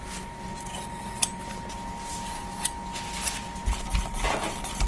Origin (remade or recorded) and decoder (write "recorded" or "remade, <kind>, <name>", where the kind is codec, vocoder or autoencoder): recorded